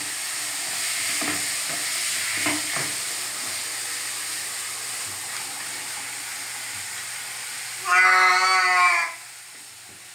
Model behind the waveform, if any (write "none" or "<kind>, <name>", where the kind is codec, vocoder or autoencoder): none